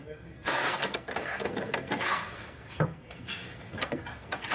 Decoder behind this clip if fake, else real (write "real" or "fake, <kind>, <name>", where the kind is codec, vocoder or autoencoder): fake, codec, SNAC